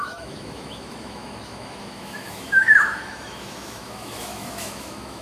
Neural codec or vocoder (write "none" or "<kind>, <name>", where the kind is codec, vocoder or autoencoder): autoencoder, DAC-VAE